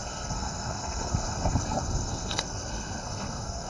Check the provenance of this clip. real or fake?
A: fake